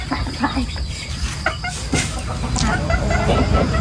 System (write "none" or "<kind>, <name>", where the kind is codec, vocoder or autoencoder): none